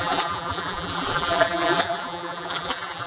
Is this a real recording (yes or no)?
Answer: no